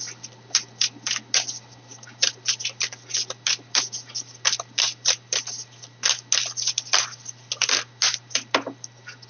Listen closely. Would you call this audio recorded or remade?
recorded